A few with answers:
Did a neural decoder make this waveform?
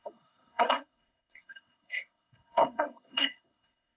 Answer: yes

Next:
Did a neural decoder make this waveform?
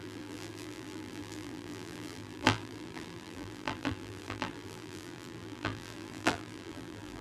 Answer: yes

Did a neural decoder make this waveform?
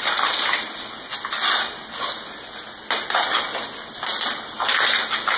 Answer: no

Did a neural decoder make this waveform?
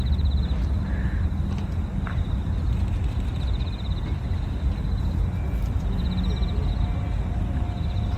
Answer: no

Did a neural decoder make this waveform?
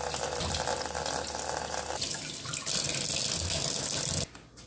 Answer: no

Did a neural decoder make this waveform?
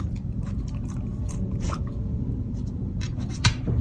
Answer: yes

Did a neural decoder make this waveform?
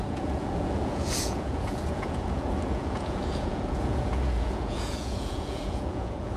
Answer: yes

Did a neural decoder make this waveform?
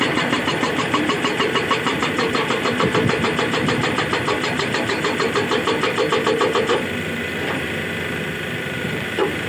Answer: yes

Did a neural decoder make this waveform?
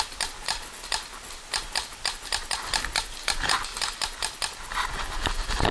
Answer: no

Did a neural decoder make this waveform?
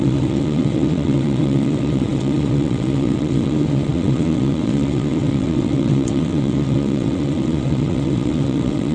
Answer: yes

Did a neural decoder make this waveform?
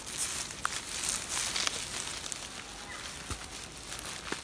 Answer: no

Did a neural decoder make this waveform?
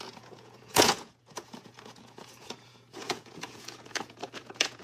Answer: yes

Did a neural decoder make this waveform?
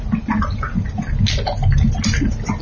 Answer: no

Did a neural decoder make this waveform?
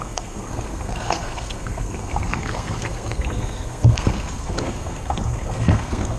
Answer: yes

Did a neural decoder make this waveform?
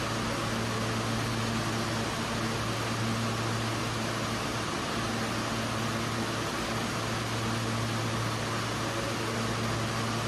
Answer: no